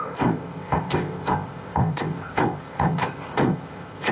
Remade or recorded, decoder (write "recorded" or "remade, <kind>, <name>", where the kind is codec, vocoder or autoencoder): remade, codec, ZipCodec